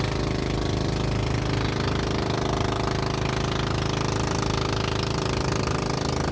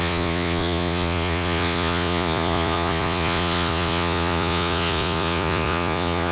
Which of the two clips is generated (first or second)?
second